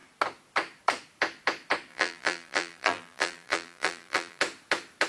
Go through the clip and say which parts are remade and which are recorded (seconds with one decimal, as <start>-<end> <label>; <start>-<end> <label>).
0.0-1.9 recorded; 1.9-4.4 remade; 4.4-5.1 recorded